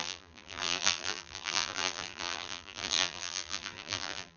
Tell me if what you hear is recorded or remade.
remade